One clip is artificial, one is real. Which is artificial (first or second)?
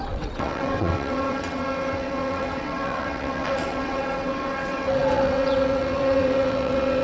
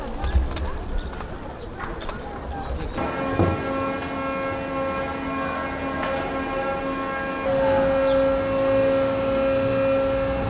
first